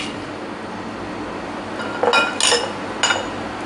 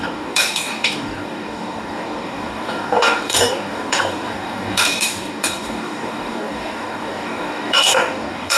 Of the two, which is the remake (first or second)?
second